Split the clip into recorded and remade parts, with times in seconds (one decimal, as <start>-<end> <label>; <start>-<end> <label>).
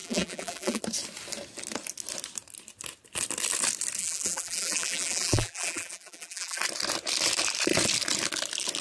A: 0.0-0.8 remade; 0.8-4.0 recorded; 4.0-6.6 remade; 6.6-8.8 recorded